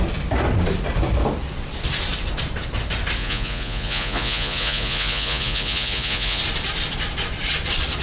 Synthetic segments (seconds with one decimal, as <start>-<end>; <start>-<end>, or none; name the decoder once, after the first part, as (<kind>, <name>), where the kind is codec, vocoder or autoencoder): 3.2-6.4 (vocoder, Vocos)